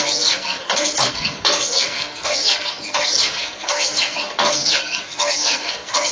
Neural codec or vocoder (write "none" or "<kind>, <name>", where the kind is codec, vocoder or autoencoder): codec, SNAC